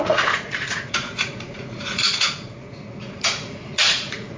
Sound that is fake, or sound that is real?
fake